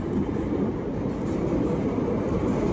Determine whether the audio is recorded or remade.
recorded